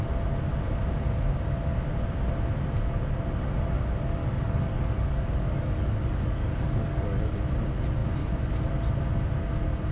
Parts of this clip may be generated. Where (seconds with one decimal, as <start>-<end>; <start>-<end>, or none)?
4.2-7.3